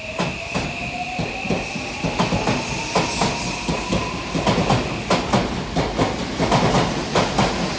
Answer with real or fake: real